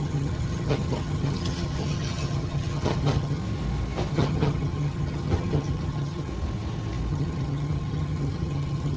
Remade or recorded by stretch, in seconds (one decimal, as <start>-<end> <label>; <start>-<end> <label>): 0.0-3.4 remade; 3.4-4.1 recorded; 4.1-6.3 remade; 6.3-7.1 recorded; 7.1-9.0 remade